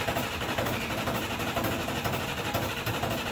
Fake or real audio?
fake